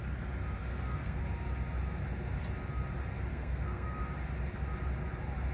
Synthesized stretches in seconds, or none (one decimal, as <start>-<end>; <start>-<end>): 0.7-1.2; 3.3-4.0